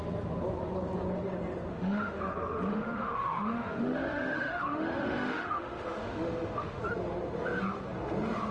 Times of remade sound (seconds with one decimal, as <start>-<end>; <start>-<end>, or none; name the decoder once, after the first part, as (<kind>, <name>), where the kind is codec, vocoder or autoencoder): 1.7-2.2 (autoencoder, DAC-VAE); 2.7-6.8